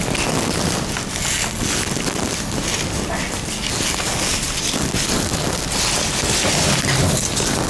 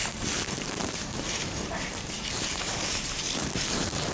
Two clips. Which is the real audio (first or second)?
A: first